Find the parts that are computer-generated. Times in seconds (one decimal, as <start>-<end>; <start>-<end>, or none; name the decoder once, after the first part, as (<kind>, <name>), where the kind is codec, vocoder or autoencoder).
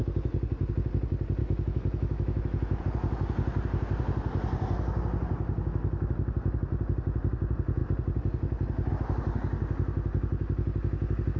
1.4-2.8 (autoencoder, DAC-VAE)